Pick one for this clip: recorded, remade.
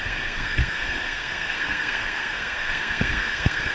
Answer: remade